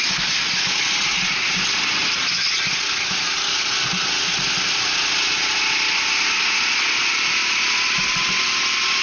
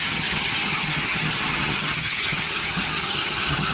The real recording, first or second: first